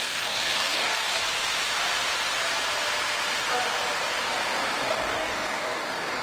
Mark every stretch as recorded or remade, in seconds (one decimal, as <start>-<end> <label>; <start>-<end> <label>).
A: 0.0-1.2 remade; 1.2-4.9 recorded; 4.9-6.2 remade